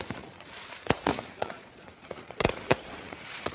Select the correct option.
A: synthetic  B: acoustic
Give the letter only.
A